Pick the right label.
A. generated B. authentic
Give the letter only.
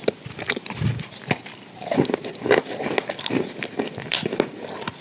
B